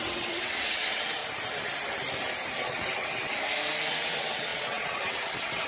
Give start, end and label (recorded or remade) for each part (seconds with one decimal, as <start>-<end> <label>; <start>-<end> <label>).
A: 0.0-1.2 remade; 1.2-2.6 recorded; 2.6-3.3 remade; 3.3-3.9 recorded; 3.9-5.7 remade